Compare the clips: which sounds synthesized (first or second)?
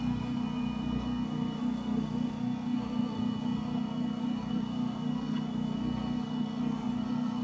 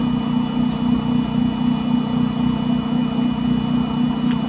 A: first